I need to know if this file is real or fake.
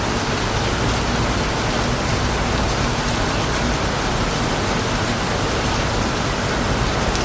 real